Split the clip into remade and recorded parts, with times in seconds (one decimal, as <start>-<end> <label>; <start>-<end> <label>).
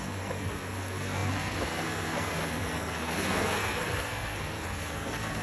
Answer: 0.0-5.4 remade